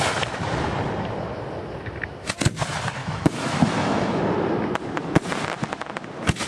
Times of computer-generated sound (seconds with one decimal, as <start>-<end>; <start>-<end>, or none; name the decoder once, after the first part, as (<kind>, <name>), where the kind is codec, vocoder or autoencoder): 3.0-4.2 (autoencoder, DAC-VAE)